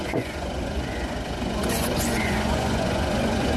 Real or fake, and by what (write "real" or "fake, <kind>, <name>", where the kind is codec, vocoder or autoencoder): fake, vocoder, Vocos